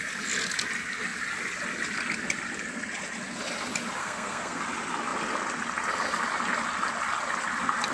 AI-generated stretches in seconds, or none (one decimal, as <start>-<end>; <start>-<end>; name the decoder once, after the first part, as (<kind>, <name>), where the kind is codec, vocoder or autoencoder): 4.0-4.6 (codec, SNAC)